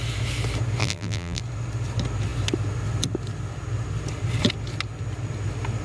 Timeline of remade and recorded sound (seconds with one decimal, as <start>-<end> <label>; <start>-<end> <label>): 0.0-0.8 recorded; 0.8-1.4 remade; 1.4-5.8 recorded